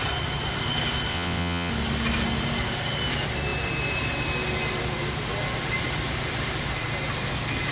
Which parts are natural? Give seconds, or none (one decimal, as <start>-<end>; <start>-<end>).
0.0-1.1; 1.7-7.7